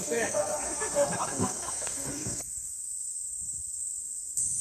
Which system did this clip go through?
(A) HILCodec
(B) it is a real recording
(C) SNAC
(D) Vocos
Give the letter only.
C